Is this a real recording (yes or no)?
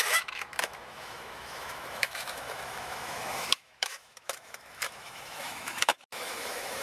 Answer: no